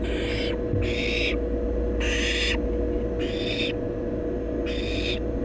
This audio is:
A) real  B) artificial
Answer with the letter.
A